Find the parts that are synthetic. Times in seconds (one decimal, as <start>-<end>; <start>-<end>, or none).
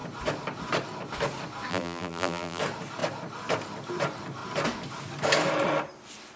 1.7-2.6